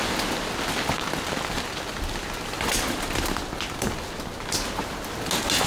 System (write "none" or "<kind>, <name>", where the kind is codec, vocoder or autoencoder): none